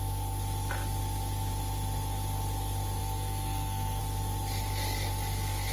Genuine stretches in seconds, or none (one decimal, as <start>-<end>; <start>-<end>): 0.0-3.0; 4.0-5.7